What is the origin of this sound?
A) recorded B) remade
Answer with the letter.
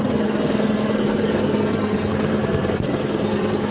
B